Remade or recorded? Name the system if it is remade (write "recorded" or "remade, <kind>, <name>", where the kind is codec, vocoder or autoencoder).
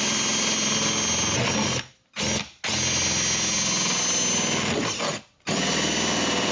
recorded